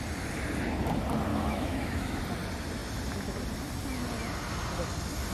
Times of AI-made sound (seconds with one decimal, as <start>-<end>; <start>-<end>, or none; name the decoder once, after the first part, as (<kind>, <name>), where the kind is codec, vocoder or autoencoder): 1.3-2.2 (autoencoder, DAC-VAE)